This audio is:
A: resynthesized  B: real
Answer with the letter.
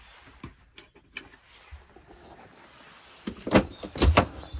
B